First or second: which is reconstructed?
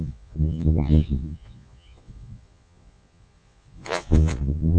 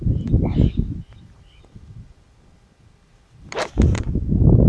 first